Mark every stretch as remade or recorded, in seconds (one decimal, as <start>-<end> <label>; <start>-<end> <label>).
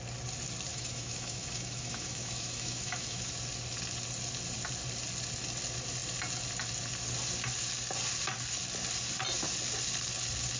0.0-0.7 recorded; 0.7-3.3 remade; 3.3-10.6 recorded